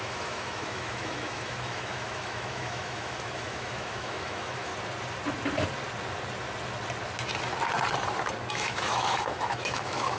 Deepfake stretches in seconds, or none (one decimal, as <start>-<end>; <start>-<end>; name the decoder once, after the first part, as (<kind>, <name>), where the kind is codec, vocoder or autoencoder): 0.0-4.7 (autoencoder, DAC-VAE); 8.5-10.2